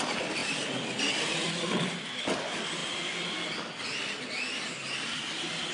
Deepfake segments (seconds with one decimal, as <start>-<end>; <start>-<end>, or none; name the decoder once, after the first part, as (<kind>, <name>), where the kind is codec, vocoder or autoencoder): 0.4-1.0 (vocoder, BigVGAN v2)